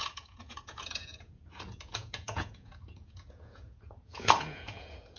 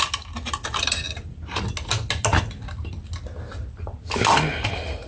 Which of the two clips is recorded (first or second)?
second